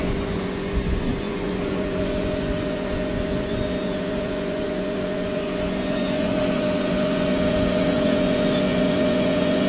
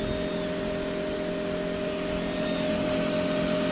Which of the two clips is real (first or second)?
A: second